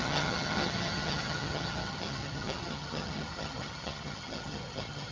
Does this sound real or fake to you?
fake